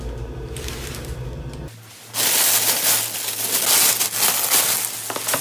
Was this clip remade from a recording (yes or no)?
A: no